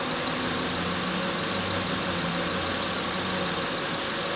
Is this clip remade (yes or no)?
no